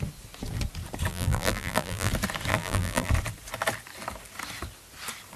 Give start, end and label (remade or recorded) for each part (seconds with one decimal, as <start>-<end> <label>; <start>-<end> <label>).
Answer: 0.0-1.1 recorded; 1.1-2.1 remade; 2.1-2.5 recorded; 2.5-3.1 remade; 3.1-5.4 recorded